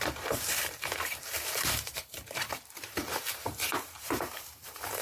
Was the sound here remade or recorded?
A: remade